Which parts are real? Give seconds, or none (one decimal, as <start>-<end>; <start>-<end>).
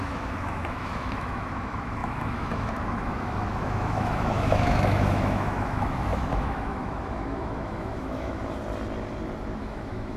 8.4-9.6